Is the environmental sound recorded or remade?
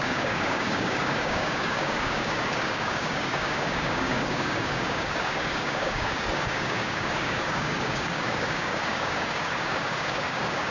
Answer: remade